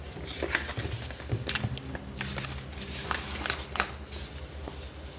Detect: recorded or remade recorded